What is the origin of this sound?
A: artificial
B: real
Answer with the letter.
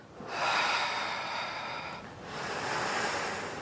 B